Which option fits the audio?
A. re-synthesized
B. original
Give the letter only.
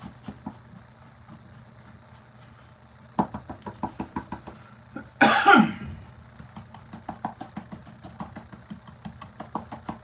B